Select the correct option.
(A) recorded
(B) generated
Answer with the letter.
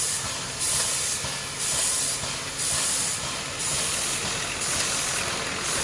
A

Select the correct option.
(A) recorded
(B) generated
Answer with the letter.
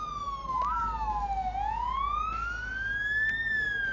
A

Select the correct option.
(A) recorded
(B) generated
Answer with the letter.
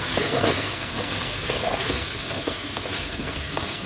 B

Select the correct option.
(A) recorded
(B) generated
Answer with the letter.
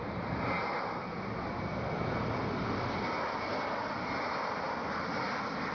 A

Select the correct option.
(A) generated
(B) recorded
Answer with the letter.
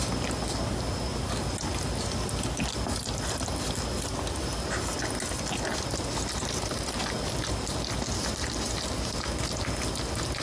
B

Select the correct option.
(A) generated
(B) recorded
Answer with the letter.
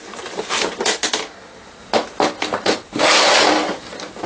B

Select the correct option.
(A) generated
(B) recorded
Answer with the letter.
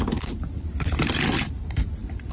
A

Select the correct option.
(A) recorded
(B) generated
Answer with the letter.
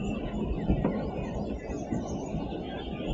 A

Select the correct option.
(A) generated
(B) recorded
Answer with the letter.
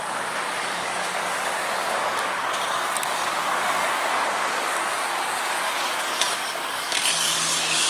A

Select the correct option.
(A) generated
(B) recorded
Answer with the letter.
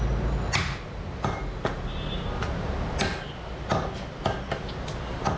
B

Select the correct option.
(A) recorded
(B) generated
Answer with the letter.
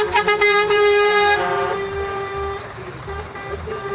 B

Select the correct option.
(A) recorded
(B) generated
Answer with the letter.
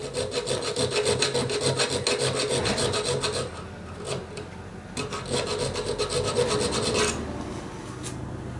A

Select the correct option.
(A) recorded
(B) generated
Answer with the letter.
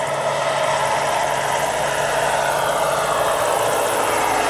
A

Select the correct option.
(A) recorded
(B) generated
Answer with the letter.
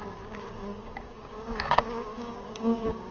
B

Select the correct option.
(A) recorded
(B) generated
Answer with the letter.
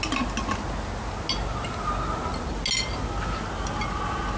A